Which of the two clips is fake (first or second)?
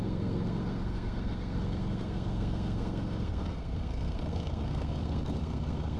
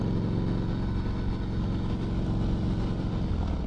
first